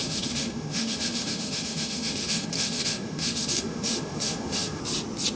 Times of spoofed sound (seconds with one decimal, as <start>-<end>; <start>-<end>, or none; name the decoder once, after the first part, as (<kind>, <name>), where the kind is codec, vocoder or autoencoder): 0.0-4.8 (autoencoder, DAC-VAE)